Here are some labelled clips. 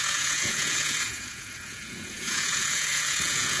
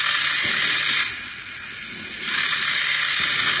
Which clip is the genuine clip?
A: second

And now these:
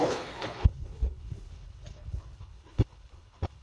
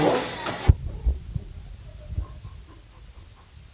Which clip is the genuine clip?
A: second